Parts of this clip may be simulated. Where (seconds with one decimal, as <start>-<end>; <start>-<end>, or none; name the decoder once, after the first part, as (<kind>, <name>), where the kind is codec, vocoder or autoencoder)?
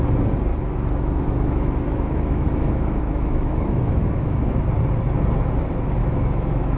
0.5-4.6 (autoencoder, DAC-VAE); 6.0-6.8